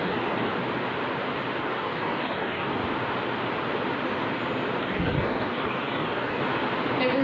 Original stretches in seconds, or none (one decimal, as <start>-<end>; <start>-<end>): 0.5-1.6; 2.8-4.8; 6.4-7.2